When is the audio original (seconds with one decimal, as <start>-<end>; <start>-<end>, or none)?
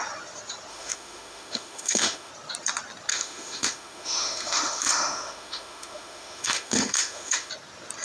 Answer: 0.0-0.7; 2.3-3.1; 7.5-8.0